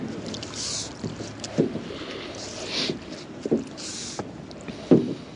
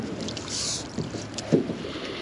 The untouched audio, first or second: first